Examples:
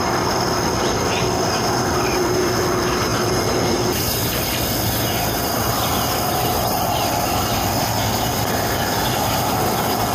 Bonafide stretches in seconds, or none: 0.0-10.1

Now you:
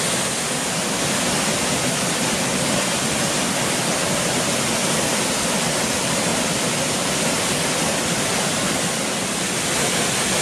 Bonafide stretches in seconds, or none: 0.0-4.8; 5.7-10.4